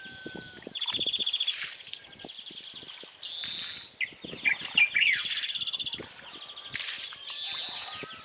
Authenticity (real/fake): real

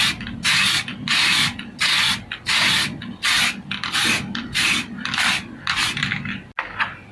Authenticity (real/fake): real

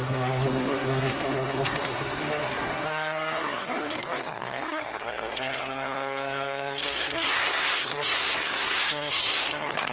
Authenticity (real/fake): fake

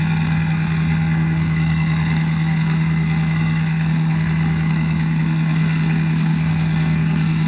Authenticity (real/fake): fake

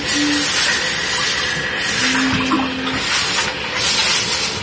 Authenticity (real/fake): real